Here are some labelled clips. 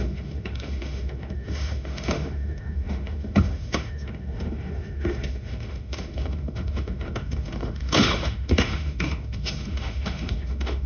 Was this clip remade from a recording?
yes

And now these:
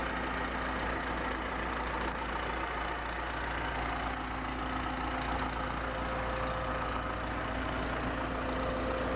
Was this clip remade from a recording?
no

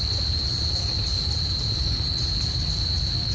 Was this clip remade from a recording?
no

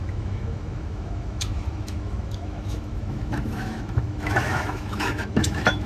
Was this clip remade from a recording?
yes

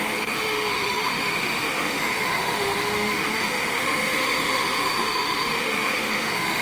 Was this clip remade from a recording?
yes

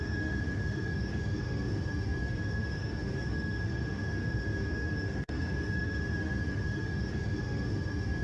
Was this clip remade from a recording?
yes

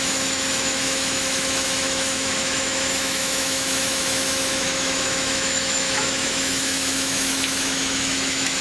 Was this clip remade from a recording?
yes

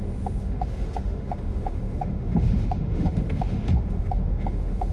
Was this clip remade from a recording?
yes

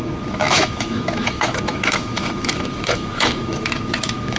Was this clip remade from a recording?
yes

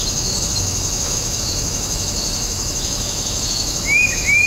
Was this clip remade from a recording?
yes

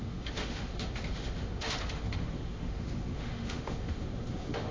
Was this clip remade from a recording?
yes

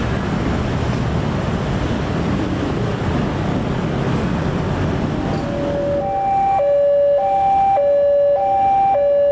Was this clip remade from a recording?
no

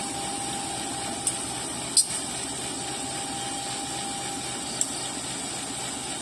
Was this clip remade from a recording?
no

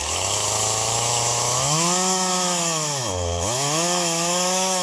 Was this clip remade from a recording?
yes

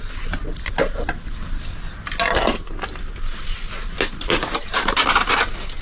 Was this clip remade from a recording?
no